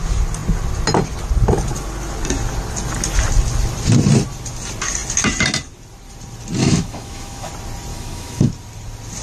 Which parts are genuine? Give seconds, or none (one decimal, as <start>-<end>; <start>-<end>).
0.0-6.6; 7.5-7.9; 8.5-9.2